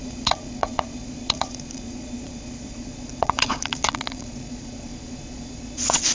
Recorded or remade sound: remade